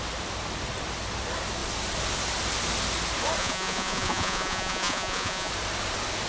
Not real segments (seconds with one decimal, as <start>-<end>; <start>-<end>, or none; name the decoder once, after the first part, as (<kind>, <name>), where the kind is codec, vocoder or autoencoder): 3.4-5.5 (vocoder, Vocos)

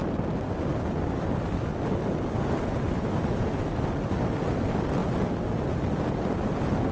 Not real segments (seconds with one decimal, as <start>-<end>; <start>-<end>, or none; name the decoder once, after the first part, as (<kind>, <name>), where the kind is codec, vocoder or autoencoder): none

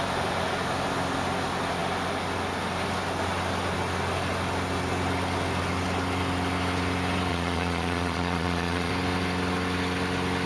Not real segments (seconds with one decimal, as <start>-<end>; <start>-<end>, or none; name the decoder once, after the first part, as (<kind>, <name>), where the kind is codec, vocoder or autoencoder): 7.3-8.9 (vocoder, Vocos)